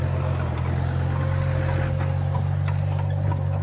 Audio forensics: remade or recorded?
recorded